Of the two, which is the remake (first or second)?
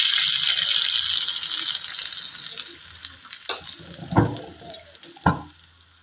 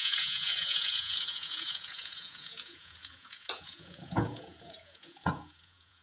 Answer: second